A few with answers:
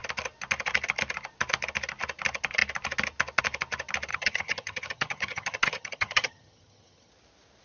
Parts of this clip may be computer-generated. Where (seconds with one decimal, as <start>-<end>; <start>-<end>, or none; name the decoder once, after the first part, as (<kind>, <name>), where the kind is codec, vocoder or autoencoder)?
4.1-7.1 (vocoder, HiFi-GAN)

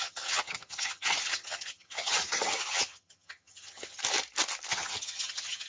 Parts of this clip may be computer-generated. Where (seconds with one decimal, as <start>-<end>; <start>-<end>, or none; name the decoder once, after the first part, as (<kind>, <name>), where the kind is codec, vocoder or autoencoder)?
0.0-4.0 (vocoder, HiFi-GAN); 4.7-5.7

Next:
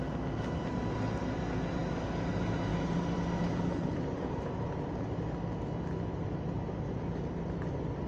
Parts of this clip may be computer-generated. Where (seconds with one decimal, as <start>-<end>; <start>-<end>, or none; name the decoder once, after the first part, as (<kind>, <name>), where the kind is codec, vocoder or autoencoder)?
2.7-5.3 (vocoder, BigVGAN v2)